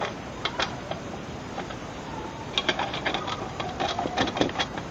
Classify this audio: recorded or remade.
remade